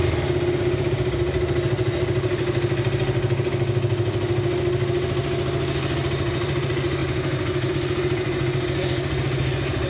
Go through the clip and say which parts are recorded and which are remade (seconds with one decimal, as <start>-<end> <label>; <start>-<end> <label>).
0.0-9.9 recorded